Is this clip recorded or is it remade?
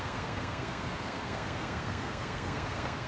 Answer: remade